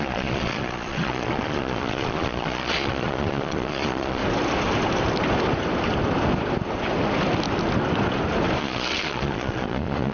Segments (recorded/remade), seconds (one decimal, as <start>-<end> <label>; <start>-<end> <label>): 0.0-4.2 remade; 4.2-8.6 recorded; 8.6-10.1 remade